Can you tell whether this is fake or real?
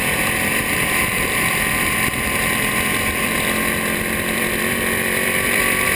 fake